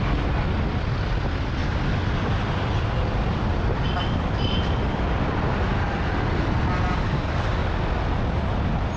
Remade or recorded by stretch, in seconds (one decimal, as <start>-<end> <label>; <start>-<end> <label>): 0.0-1.6 remade; 1.6-2.3 recorded; 2.3-7.6 remade; 7.6-9.0 recorded